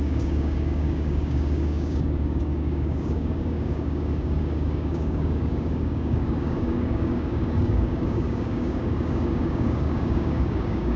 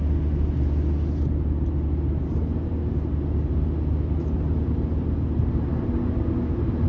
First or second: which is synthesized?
first